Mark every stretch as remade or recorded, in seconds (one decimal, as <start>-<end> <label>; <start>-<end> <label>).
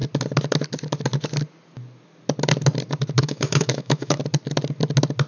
0.0-3.2 recorded; 3.2-4.2 remade; 4.2-5.3 recorded